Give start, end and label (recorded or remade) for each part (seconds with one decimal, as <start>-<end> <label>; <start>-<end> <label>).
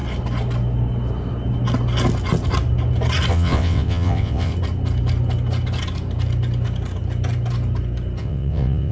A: 0.0-3.3 recorded; 3.3-4.5 remade; 4.5-8.2 recorded; 8.2-8.9 remade